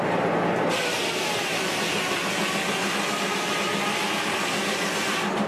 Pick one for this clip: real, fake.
real